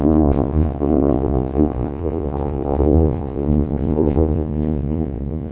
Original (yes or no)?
no